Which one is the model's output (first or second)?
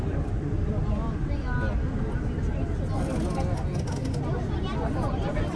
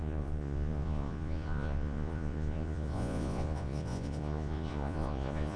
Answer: second